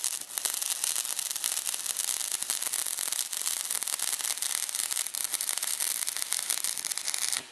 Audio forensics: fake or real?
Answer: real